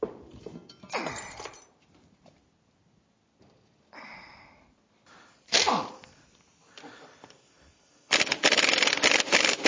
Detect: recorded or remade remade